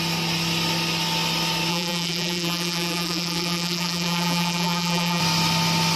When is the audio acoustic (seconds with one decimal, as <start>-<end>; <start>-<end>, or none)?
0.0-1.7; 5.2-6.0